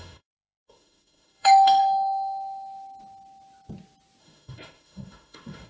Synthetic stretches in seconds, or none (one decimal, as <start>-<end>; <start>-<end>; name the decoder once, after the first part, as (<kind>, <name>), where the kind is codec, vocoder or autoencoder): 0.0-1.8 (autoencoder, DAC-VAE); 4.2-5.7

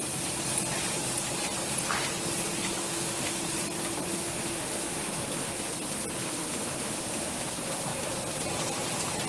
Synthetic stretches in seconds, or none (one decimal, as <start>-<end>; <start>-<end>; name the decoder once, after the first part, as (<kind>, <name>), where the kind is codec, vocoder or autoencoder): 2.8-3.4 (autoencoder, DAC-VAE); 4.1-5.6; 6.2-7.5

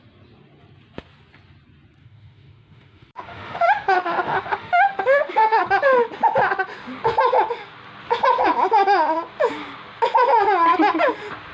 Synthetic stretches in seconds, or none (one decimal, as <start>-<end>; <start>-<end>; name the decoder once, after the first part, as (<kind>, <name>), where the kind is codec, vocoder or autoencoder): 2.0-5.6 (autoencoder, DAC-VAE)

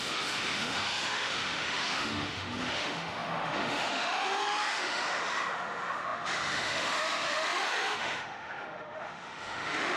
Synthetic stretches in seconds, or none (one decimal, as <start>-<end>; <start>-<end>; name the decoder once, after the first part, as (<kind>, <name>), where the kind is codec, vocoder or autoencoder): 0.0-10.0 (autoencoder, DAC-VAE)

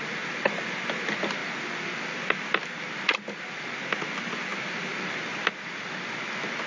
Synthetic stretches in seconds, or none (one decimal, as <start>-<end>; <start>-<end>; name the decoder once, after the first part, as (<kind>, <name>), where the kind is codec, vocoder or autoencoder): none